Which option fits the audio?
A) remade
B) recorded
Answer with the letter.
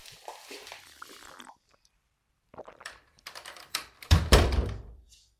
A